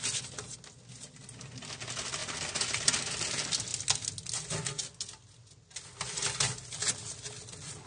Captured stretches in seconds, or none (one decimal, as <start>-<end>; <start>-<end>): 0.0-7.9

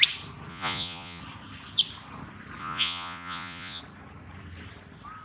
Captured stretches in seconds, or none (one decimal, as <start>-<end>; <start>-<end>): 0.0-0.5; 1.2-2.6; 3.8-5.2

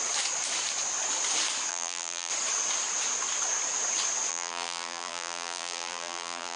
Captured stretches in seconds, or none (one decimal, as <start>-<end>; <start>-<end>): 0.0-1.7; 2.3-4.3

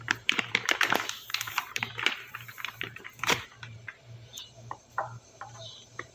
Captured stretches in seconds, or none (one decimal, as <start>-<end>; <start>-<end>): none

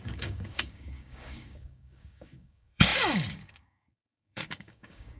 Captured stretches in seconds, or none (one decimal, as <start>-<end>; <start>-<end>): none

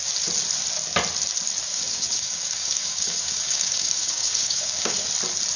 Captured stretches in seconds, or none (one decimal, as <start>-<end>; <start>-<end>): 0.0-1.7; 5.1-5.6